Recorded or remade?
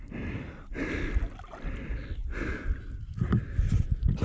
recorded